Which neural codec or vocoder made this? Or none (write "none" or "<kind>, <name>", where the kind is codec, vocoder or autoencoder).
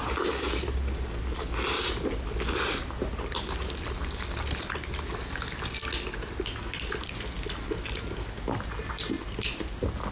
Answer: none